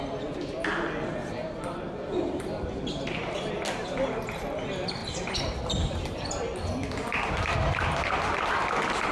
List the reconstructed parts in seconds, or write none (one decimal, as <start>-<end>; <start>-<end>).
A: 1.2-2.6; 5.0-6.3